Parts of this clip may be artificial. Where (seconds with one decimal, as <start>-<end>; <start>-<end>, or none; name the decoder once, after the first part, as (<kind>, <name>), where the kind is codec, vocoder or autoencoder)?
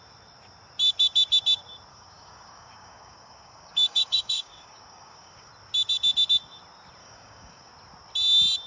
1.9-5.5 (codec, DAC); 7.0-7.7